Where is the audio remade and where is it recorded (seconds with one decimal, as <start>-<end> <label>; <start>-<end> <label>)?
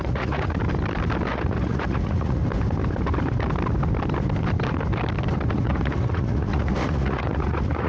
0.0-0.6 remade; 0.6-1.3 recorded; 1.3-2.4 remade; 2.4-5.5 recorded; 5.5-7.9 remade